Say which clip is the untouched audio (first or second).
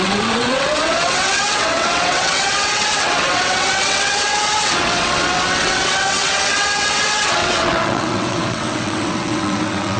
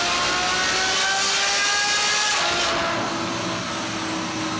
second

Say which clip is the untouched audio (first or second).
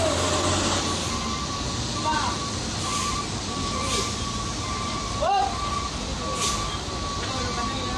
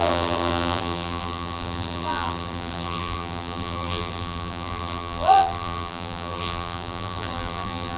first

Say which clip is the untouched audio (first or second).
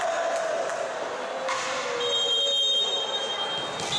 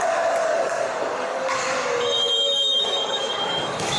first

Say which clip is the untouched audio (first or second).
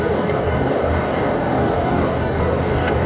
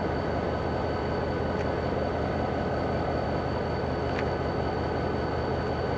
second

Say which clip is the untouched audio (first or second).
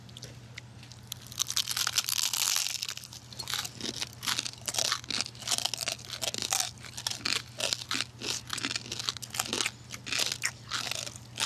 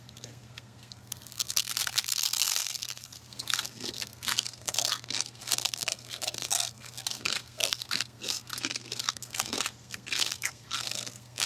first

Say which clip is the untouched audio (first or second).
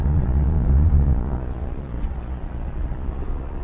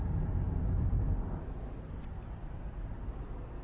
second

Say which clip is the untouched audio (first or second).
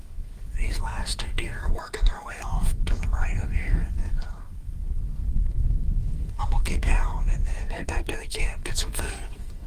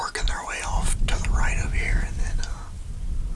second